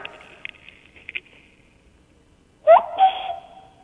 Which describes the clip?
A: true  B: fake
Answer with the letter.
A